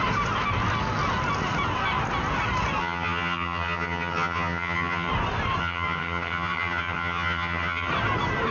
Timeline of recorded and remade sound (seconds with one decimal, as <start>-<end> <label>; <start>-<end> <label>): 0.0-2.8 recorded; 2.8-5.1 remade; 5.1-5.6 recorded; 5.6-7.9 remade; 7.9-8.5 recorded